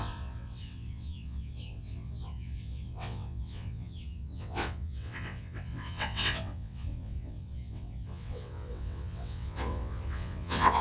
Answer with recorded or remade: remade